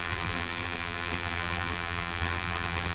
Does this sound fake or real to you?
fake